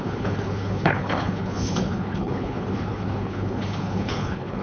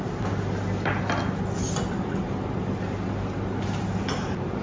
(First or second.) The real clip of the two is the second